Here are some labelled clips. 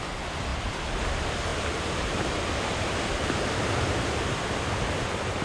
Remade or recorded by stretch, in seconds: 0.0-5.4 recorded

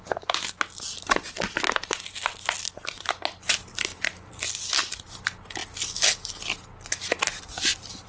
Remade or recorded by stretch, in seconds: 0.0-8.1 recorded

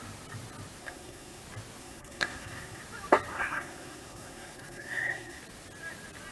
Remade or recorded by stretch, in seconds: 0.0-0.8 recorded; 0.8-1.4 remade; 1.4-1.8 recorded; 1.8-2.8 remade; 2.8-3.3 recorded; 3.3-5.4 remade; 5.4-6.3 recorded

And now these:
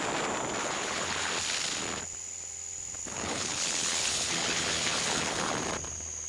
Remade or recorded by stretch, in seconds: 0.0-0.6 recorded; 0.6-1.3 remade; 1.3-3.0 recorded; 3.0-5.5 remade; 5.5-6.3 recorded

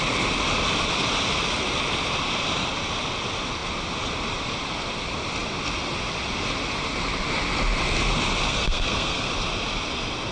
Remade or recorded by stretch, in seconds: 0.0-8.5 recorded; 8.5-9.3 remade; 9.3-10.3 recorded

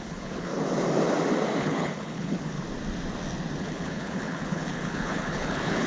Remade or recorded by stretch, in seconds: 0.0-0.5 remade; 0.5-1.6 recorded; 1.6-2.5 remade; 2.5-3.6 recorded; 3.6-5.9 remade